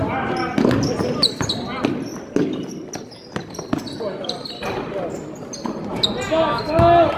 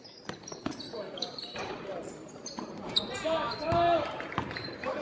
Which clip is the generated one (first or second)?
second